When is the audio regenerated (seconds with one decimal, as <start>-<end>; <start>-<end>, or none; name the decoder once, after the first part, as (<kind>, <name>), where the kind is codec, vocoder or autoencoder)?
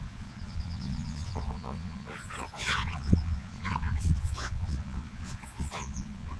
0.0-6.4 (vocoder, Vocos)